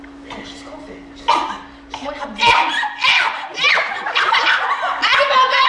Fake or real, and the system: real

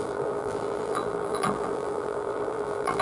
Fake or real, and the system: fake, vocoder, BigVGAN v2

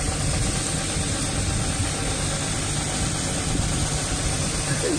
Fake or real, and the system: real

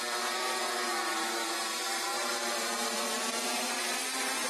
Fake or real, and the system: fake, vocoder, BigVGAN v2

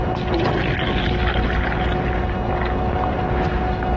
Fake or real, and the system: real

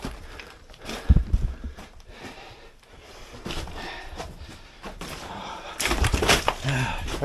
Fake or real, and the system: fake, vocoder, BigVGAN v2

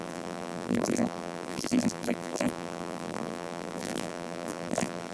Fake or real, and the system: fake, vocoder, BigVGAN v2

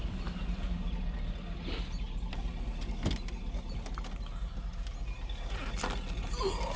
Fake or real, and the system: real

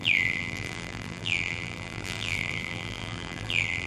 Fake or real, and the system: fake, vocoder, BigVGAN v2